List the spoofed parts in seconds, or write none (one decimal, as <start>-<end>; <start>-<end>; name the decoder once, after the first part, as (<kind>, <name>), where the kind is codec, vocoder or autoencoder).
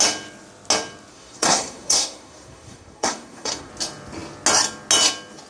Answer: 1.1-3.7 (codec, SNAC)